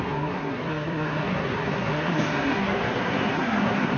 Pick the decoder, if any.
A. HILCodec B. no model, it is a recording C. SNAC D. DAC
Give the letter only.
C